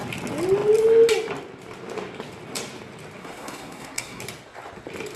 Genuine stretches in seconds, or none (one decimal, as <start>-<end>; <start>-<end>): 0.0-3.2; 4.2-5.2